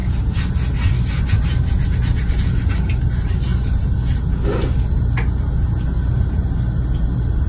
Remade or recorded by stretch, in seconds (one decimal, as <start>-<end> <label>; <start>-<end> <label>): 0.0-7.5 recorded

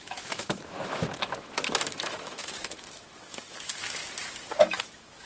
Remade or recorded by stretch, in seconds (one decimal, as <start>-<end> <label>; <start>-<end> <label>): 0.0-3.8 remade; 3.8-4.6 recorded; 4.6-5.3 remade